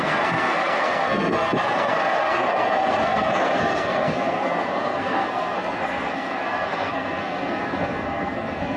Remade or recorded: remade